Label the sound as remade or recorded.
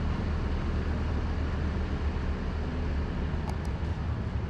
recorded